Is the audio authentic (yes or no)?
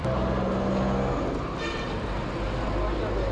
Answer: yes